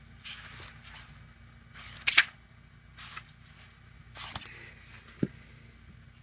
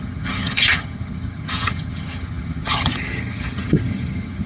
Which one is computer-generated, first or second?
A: second